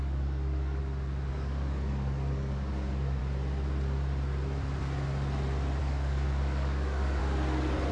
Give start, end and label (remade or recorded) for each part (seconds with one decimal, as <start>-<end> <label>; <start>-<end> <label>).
0.0-0.8 remade; 0.8-1.3 recorded; 1.3-3.2 remade; 3.2-5.8 recorded; 5.8-7.2 remade; 7.2-7.9 recorded